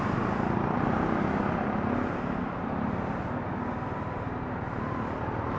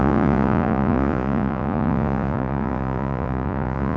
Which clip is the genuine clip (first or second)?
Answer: first